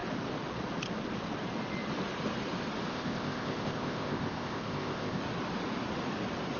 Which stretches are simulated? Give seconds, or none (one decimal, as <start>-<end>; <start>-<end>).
2.9-5.2